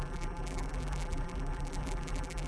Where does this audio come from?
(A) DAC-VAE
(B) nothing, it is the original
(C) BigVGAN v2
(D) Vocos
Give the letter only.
C